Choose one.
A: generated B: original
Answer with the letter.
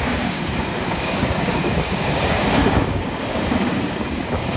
A